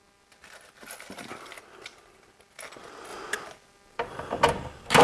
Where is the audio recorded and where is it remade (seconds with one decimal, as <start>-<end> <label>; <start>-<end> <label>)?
0.0-5.0 recorded